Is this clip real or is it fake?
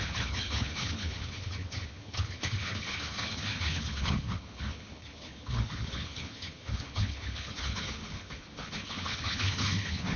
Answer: fake